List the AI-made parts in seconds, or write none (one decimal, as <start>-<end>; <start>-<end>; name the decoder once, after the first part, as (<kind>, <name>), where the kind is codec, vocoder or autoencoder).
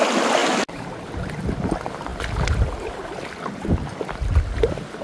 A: none